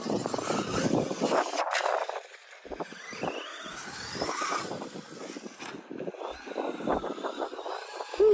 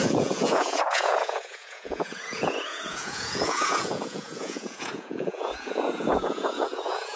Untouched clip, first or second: first